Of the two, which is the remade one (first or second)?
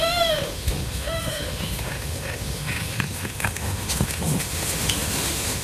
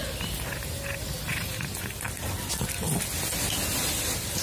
first